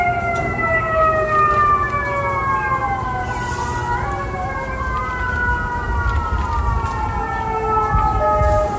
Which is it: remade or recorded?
recorded